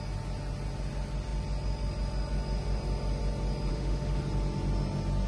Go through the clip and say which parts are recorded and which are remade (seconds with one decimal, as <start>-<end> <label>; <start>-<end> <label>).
0.0-3.7 recorded; 3.7-4.2 remade; 4.2-5.3 recorded